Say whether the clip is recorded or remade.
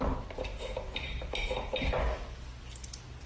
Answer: recorded